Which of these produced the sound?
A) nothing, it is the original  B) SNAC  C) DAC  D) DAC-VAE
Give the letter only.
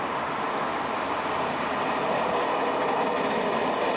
A